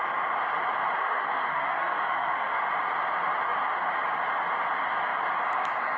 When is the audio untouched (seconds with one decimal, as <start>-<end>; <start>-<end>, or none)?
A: 0.0-1.0; 2.6-6.0